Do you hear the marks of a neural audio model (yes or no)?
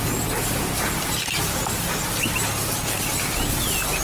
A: yes